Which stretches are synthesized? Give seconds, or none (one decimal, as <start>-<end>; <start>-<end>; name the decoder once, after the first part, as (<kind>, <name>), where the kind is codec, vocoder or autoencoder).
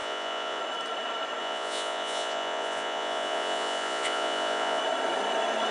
0.0-0.6 (vocoder, Vocos); 1.4-4.8